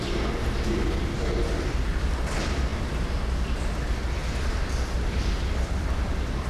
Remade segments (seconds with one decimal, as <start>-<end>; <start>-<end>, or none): 4.2-5.3